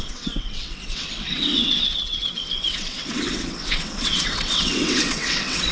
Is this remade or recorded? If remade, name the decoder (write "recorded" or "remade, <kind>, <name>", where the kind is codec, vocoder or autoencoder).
remade, vocoder, WaveNeXt